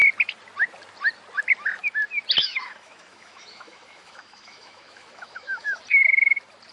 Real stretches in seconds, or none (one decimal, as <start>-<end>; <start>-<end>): 0.0-2.4; 5.8-6.7